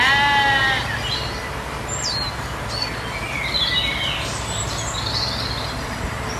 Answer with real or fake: real